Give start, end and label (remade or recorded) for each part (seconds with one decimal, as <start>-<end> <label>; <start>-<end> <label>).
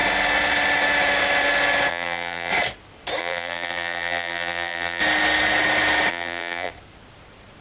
0.0-1.9 recorded; 1.9-2.5 remade; 2.5-3.2 recorded; 3.2-5.0 remade; 5.0-6.1 recorded; 6.1-6.7 remade; 6.7-7.6 recorded